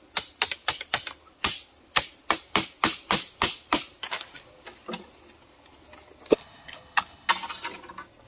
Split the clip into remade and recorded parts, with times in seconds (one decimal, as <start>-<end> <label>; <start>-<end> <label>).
0.0-6.3 recorded; 6.3-7.3 remade; 7.3-8.3 recorded